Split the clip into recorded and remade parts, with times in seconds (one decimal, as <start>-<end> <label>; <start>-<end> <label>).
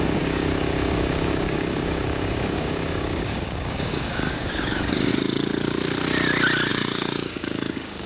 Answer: 0.0-5.1 remade; 5.1-6.7 recorded; 6.7-8.1 remade